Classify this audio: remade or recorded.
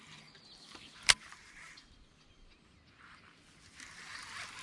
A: recorded